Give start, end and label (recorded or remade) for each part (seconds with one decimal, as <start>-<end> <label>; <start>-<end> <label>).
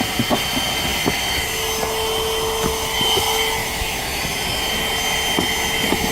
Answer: 0.0-3.6 recorded; 3.6-4.2 remade; 4.2-6.1 recorded